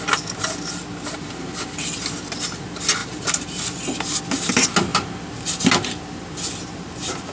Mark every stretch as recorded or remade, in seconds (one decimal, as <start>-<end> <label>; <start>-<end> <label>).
0.0-3.0 recorded; 3.0-3.6 remade; 3.6-7.3 recorded